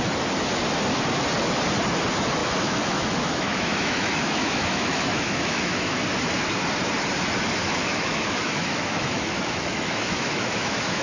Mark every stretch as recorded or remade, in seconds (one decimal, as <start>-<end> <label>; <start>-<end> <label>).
0.0-2.4 recorded; 2.4-6.0 remade; 6.0-7.6 recorded; 7.6-11.0 remade